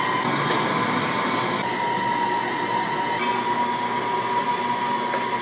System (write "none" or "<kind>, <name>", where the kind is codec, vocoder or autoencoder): none